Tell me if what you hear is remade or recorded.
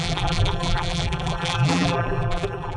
remade